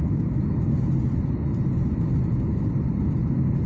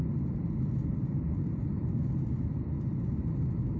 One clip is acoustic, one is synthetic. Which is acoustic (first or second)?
first